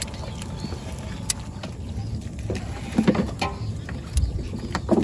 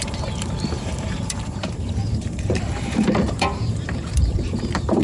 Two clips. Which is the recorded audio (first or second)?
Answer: first